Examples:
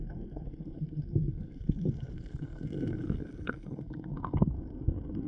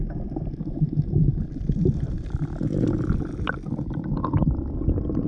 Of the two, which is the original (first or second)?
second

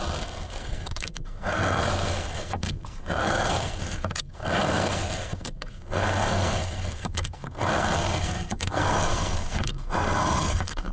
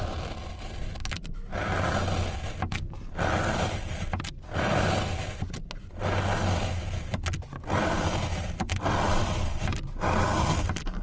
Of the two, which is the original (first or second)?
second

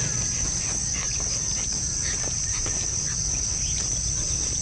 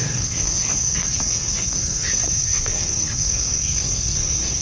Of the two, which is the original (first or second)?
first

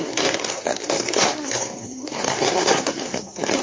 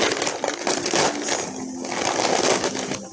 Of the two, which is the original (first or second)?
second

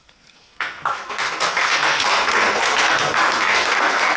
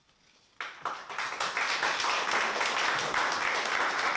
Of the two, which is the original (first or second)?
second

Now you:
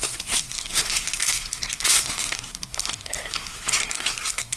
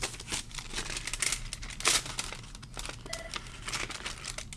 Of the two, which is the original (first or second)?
second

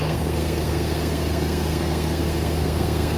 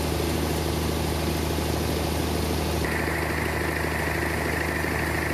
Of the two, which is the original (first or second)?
second